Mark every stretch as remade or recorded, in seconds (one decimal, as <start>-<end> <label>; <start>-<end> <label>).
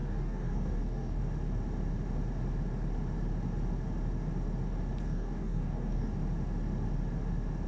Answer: 0.0-1.2 remade; 1.2-5.0 recorded; 5.0-6.2 remade; 6.2-7.7 recorded